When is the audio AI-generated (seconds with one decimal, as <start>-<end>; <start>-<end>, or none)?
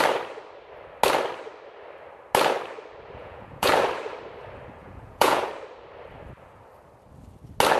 3.2-3.7; 4.8-5.5